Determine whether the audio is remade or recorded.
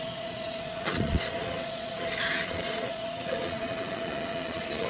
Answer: remade